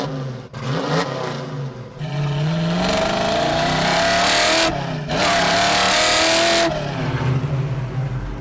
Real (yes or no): yes